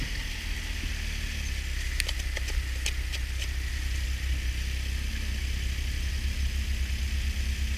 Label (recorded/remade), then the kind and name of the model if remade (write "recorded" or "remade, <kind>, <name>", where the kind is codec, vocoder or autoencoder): recorded